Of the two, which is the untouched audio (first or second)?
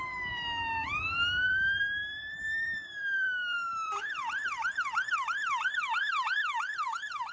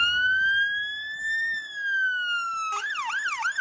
second